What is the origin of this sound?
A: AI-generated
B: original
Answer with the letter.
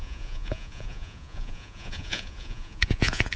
A